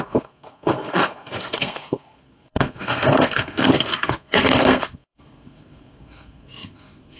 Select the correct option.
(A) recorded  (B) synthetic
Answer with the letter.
B